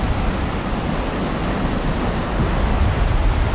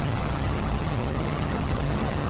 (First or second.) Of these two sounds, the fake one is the second